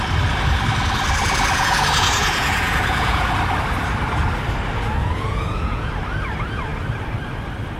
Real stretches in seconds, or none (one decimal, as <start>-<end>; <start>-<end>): 0.0-1.2; 3.4-5.0; 5.9-7.8